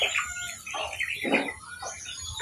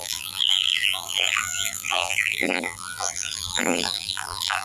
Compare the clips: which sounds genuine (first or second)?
first